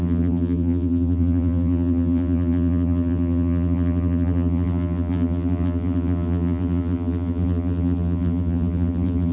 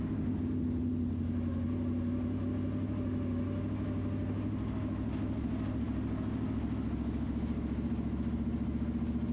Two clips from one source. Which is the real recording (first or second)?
second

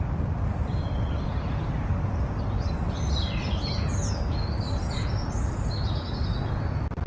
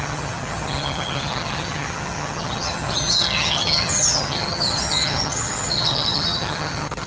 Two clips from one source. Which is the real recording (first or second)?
first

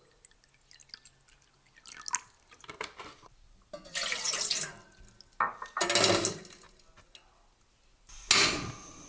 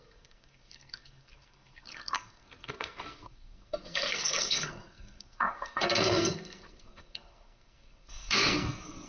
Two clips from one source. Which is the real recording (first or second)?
first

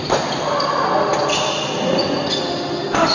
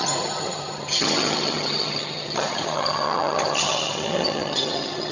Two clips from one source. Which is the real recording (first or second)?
first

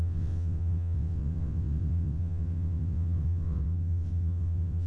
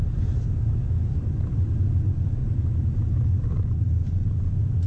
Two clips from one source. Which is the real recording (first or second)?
second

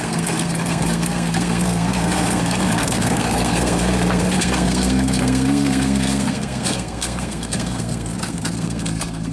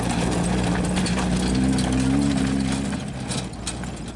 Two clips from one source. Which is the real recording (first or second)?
second